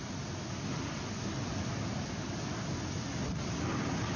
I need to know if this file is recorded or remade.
recorded